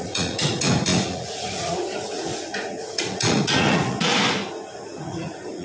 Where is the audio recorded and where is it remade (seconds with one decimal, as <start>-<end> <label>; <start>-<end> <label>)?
0.0-4.1 remade; 4.1-4.7 recorded; 4.7-5.6 remade